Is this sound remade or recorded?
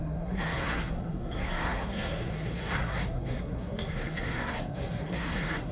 remade